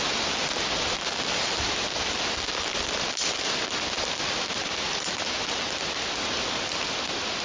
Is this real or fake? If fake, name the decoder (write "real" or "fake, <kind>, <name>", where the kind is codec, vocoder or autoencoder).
real